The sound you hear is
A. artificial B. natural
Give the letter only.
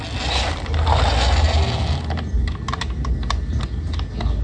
B